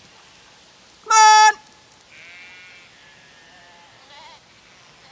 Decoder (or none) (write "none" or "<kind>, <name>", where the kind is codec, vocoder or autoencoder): none